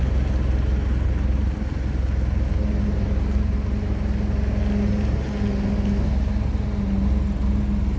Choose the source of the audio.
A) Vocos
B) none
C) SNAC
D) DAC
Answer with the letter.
B